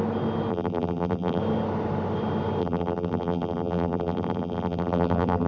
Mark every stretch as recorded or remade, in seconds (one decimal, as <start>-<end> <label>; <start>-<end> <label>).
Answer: 0.0-0.5 recorded; 0.5-1.4 remade; 1.4-2.6 recorded; 2.6-5.5 remade